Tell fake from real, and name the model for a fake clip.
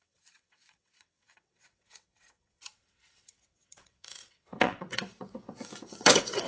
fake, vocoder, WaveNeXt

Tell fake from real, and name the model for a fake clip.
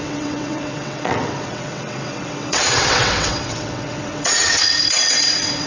fake, vocoder, WaveNeXt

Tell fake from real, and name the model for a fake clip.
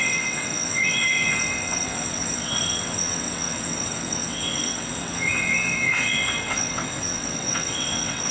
fake, vocoder, WaveNeXt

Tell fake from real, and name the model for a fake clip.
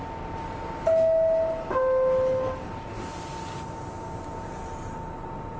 real